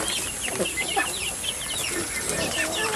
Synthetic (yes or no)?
no